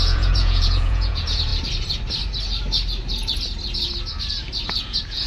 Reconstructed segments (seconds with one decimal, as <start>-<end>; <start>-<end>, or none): 0.0-1.5; 4.7-5.3